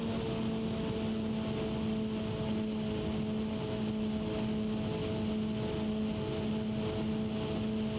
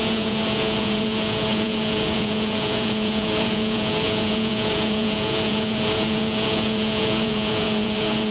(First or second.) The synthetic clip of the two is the second